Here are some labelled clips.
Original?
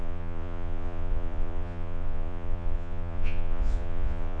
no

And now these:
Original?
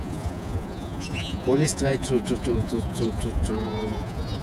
no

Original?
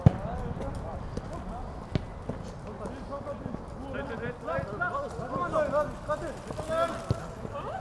yes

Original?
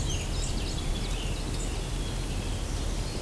yes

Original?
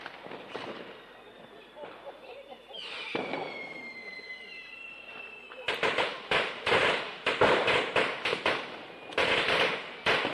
yes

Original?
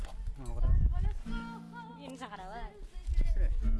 yes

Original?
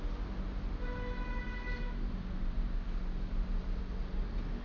yes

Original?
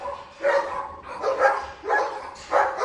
yes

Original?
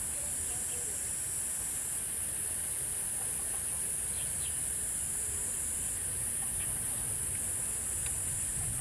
yes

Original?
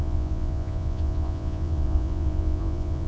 no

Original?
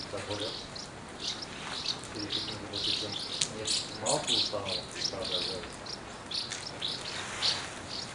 yes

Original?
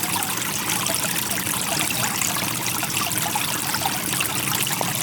yes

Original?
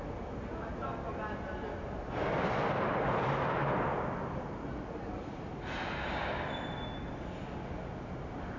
yes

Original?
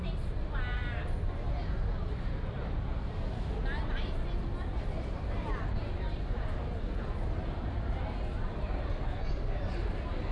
yes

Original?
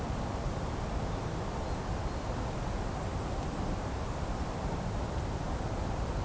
yes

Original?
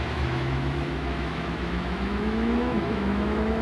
no